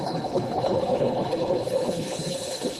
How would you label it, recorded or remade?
remade